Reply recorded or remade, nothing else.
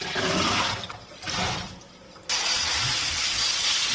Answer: recorded